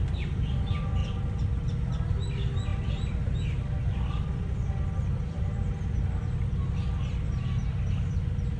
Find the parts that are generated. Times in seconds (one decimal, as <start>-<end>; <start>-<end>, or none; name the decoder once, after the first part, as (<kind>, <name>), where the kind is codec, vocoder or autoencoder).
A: 1.0-1.9 (vocoder, BigVGAN v2)